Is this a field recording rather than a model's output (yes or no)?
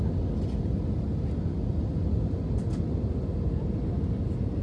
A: yes